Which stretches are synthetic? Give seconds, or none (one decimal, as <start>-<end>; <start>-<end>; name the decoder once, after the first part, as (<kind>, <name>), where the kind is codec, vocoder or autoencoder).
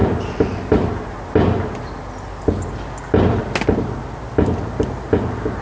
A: none